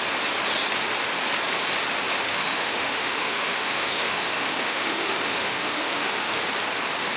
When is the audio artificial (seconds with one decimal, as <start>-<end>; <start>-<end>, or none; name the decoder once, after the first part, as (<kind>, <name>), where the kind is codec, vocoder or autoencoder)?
2.3-6.4 (autoencoder, DAC-VAE)